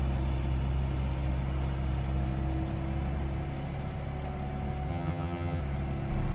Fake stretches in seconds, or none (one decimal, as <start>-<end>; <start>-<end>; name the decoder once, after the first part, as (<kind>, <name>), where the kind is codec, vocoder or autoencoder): 4.9-5.6 (vocoder, HiFi-GAN)